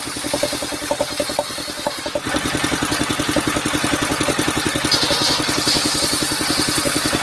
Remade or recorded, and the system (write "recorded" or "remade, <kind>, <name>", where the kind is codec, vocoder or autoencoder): recorded